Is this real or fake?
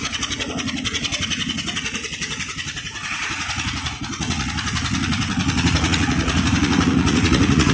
fake